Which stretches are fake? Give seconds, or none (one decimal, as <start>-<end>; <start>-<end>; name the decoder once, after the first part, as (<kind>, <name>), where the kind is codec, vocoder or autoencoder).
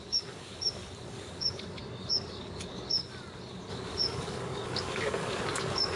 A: 0.0-0.8 (codec, DAC); 1.3-3.0; 3.7-6.0